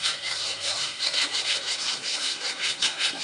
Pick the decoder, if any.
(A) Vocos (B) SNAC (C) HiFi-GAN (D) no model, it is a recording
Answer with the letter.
B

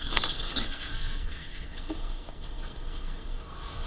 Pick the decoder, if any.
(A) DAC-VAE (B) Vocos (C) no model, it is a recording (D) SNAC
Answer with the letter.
D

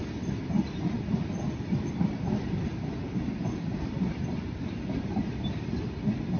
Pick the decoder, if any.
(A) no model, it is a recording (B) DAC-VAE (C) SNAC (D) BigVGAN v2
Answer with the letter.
A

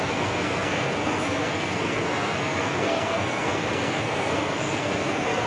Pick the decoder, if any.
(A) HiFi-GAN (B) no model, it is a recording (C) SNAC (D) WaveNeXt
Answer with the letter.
C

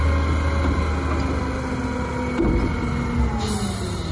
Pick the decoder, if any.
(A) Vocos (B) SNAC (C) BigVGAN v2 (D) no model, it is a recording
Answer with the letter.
D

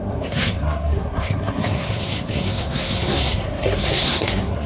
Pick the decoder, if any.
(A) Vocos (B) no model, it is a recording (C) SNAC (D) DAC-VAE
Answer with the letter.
C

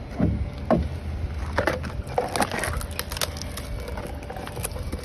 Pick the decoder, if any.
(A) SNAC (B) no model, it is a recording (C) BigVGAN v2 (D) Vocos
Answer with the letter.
B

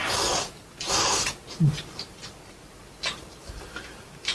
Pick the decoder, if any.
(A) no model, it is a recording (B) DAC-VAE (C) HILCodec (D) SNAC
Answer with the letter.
A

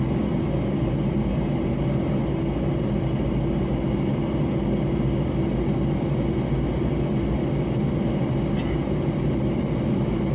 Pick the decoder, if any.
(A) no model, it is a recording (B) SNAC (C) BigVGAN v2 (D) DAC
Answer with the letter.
A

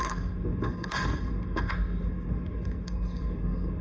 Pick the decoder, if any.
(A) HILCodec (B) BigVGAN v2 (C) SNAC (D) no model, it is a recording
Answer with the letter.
C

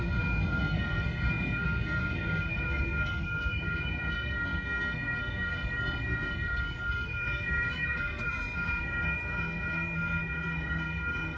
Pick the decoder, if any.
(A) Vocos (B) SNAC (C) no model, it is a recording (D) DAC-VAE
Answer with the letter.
B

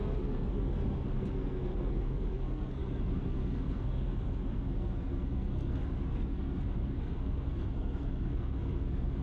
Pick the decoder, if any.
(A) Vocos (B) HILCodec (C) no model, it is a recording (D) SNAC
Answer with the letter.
D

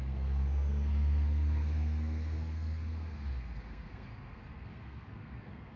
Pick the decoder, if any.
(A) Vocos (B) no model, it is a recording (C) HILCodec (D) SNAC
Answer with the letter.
D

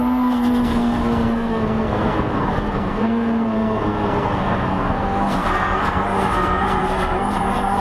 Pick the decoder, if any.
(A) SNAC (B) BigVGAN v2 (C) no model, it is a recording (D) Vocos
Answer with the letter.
A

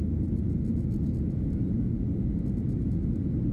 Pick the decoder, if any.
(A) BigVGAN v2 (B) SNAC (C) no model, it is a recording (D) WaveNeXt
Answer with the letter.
C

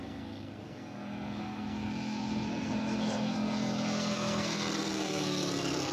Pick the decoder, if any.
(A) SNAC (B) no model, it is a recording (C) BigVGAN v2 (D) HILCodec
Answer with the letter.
A